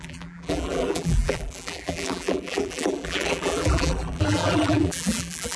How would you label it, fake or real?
fake